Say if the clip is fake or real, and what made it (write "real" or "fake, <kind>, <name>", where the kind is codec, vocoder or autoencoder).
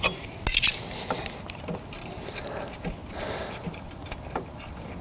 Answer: real